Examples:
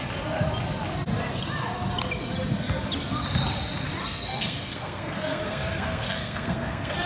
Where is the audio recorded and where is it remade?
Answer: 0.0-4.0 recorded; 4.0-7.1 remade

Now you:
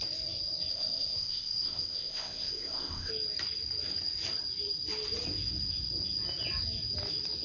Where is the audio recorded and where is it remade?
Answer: 0.0-0.7 recorded; 0.7-3.1 remade; 3.1-7.4 recorded

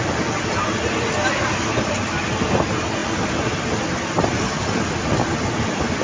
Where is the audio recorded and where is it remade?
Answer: 0.0-6.0 recorded